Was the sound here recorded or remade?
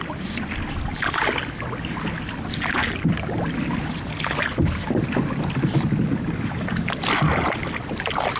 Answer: recorded